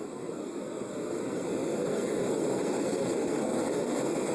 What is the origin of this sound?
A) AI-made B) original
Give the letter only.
A